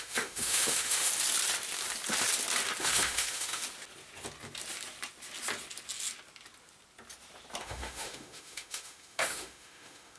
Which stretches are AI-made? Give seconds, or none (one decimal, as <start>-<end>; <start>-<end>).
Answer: 0.0-1.1; 2.8-3.6; 7.6-10.2